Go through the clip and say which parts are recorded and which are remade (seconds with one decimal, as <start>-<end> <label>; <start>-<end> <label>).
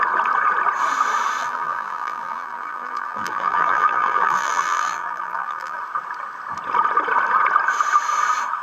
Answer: 0.0-1.4 recorded; 1.4-5.8 remade; 5.8-8.6 recorded